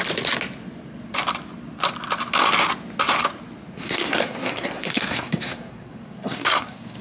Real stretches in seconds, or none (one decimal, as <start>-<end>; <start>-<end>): 0.0-3.7